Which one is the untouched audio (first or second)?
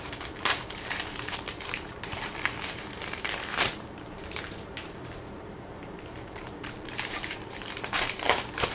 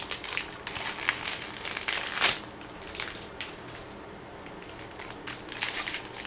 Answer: second